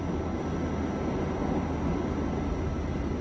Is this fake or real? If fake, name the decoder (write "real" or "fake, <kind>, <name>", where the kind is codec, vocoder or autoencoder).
real